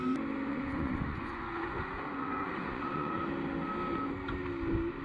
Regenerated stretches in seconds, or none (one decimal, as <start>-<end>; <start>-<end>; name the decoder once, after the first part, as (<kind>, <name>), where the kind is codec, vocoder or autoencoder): 0.5-3.2 (vocoder, Vocos)